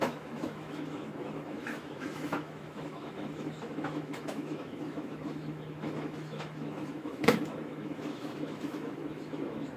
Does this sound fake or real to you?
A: fake